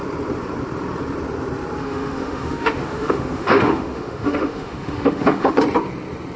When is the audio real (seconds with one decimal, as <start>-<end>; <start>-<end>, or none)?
0.0-1.8; 5.6-6.4